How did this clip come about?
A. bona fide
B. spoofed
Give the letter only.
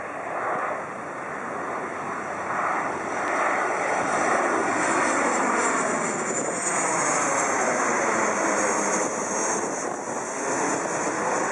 A